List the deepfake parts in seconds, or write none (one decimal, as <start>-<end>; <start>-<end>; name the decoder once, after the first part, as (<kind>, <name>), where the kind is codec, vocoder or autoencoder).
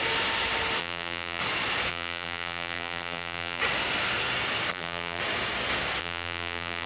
0.8-1.4 (vocoder, BigVGAN v2); 1.9-3.6; 4.7-5.2; 6.0-6.9